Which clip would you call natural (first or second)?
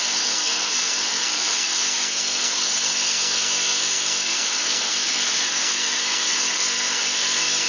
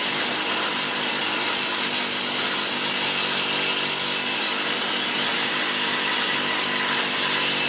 second